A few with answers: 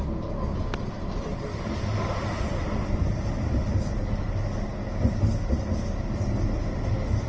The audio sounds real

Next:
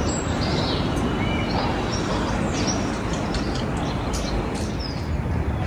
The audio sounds real